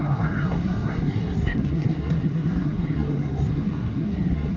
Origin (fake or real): fake